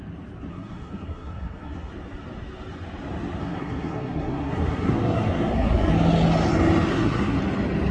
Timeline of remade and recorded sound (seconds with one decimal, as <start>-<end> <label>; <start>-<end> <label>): 0.0-0.5 recorded; 0.5-1.9 remade; 1.9-3.4 recorded; 3.4-5.9 remade; 5.9-6.9 recorded; 6.9-7.4 remade; 7.4-7.9 recorded